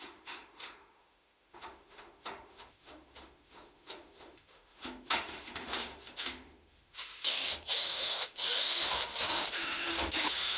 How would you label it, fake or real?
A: fake